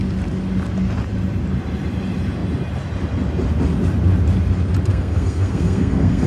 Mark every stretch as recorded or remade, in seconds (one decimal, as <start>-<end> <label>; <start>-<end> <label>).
0.0-4.9 recorded; 4.9-6.3 remade